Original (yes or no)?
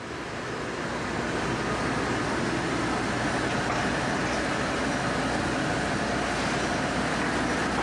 yes